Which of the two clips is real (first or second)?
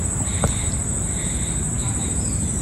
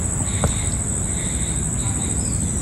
second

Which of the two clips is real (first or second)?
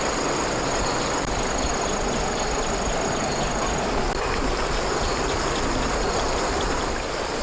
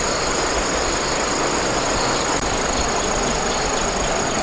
second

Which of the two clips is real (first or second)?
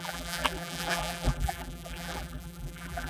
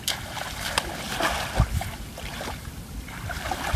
second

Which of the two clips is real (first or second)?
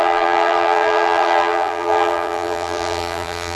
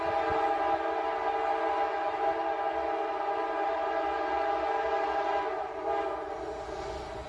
second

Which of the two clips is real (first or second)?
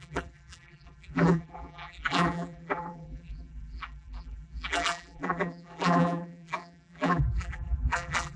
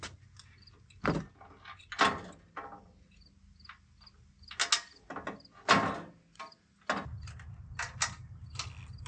second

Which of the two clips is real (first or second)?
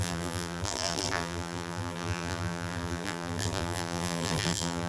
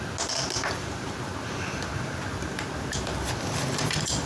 second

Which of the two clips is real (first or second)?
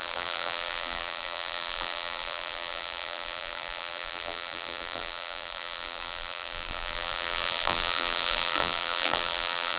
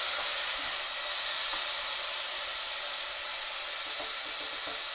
second